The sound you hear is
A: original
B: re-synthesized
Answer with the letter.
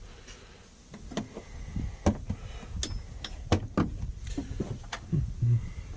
A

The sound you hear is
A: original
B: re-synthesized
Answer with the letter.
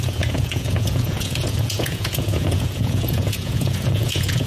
B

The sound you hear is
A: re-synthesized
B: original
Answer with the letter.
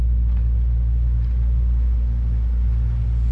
B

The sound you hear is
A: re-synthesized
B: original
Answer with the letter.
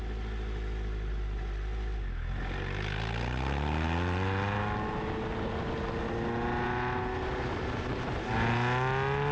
B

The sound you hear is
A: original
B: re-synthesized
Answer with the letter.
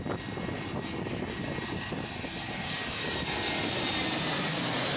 A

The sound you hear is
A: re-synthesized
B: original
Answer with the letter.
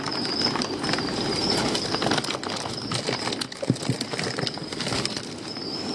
B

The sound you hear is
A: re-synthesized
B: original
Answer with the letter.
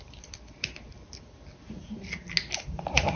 B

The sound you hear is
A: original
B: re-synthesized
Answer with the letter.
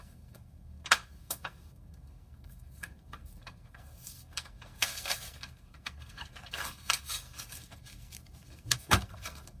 B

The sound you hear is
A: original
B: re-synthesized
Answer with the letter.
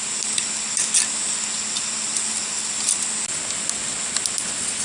A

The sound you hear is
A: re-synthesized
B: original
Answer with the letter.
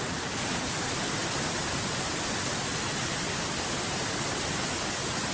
B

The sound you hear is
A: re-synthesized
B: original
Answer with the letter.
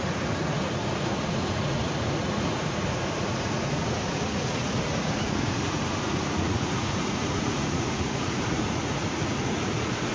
A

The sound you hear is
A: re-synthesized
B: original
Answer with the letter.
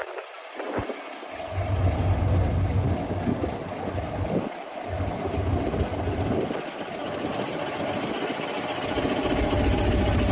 B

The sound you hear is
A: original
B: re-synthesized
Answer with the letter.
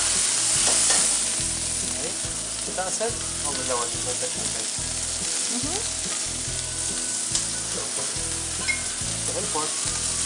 A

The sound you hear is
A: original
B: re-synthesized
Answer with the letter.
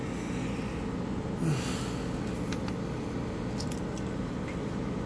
A